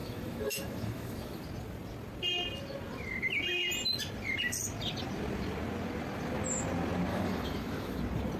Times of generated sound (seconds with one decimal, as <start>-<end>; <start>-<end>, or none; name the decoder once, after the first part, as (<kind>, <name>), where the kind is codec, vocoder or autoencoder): 0.0-1.4 (autoencoder, DAC-VAE); 7.1-8.0